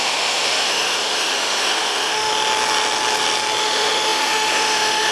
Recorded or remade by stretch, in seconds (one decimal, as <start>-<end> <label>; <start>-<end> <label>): 0.0-2.3 remade; 2.3-3.6 recorded; 3.6-5.1 remade